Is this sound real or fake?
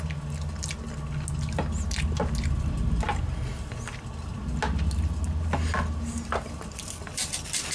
real